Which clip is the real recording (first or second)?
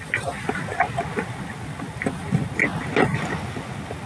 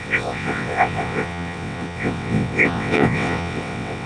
first